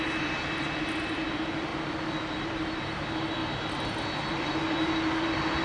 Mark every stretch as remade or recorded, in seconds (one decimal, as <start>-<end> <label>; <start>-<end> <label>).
0.0-3.4 remade; 3.4-4.3 recorded; 4.3-5.6 remade